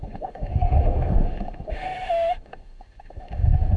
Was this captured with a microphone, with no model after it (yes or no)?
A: no